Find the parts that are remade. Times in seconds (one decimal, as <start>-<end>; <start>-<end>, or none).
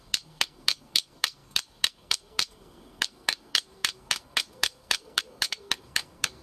0.0-6.4